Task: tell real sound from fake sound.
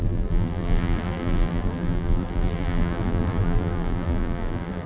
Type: fake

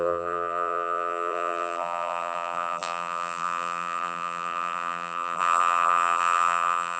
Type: fake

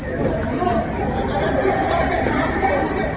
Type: fake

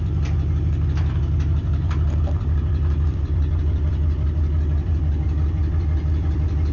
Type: fake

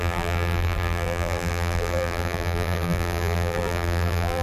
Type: fake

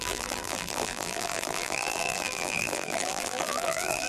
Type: fake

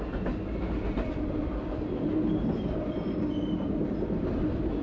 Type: real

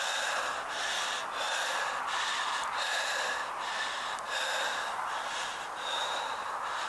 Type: real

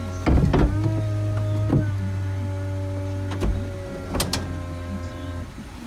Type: real